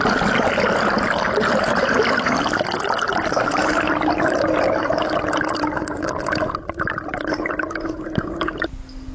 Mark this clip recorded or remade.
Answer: recorded